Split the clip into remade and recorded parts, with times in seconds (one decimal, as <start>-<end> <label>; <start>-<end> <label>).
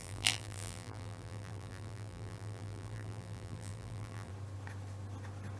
0.0-4.3 remade; 4.3-5.6 recorded